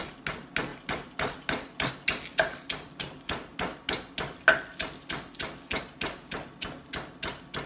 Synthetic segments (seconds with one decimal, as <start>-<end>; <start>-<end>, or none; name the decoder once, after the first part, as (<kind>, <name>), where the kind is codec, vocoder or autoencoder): none